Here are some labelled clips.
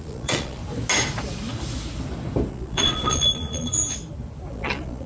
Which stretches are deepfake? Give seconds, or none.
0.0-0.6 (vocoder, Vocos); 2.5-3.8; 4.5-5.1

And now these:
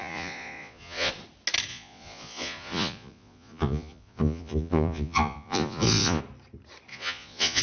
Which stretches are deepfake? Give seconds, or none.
0.0-1.1 (vocoder, Vocos); 1.7-6.2; 6.9-7.6

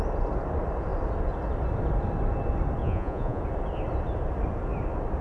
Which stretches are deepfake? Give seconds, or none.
2.8-3.4 (vocoder, Vocos)

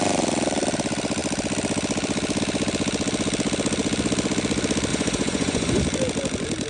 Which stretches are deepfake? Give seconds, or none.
4.9-5.8 (vocoder, Vocos)

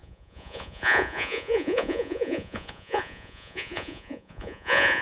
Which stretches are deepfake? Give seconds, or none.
0.0-5.0 (vocoder, Vocos)